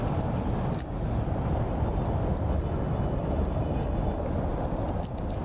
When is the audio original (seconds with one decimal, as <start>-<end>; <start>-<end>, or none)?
0.0-5.4